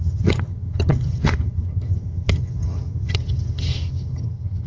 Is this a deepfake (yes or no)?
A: yes